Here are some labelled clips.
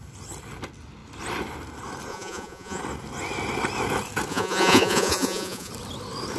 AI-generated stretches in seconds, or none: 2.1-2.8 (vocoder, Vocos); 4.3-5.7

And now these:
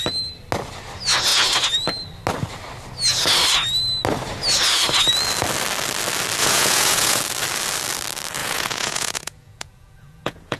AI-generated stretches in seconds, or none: 6.4-7.2 (vocoder, Vocos); 8.4-10.6

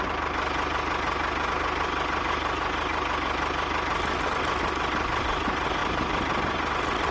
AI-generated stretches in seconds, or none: none